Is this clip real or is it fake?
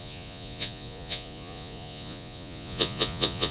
fake